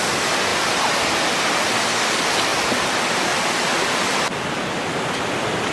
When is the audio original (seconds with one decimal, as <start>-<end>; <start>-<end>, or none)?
0.0-5.7

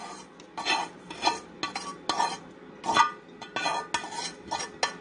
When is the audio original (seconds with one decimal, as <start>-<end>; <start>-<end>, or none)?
0.0-5.0

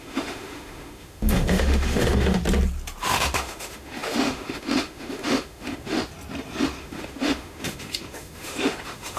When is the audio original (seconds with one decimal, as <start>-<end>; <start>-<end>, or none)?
2.4-3.0; 6.0-6.8